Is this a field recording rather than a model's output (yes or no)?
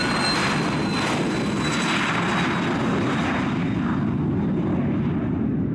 yes